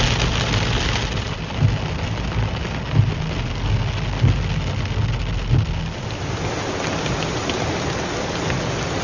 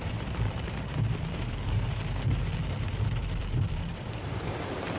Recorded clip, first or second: first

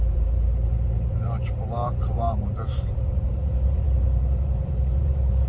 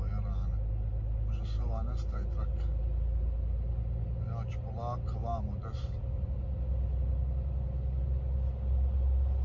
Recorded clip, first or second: second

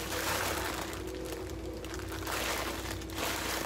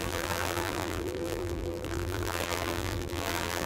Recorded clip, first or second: first